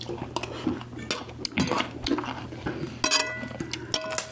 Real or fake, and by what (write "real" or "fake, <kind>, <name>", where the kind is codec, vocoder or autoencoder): real